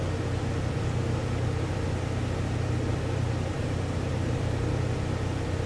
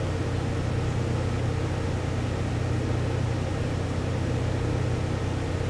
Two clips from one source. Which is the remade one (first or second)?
first